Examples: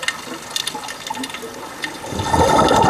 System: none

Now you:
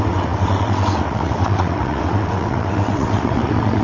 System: vocoder, WaveNeXt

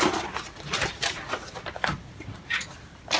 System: none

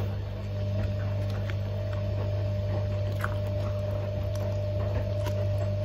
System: none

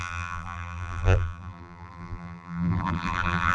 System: vocoder, BigVGAN v2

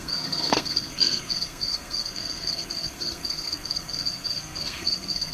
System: codec, SNAC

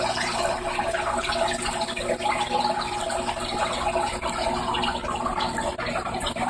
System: none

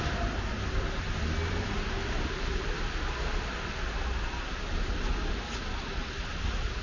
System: none